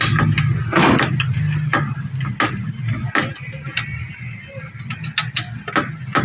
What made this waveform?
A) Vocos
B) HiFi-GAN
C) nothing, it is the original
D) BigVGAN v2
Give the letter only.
C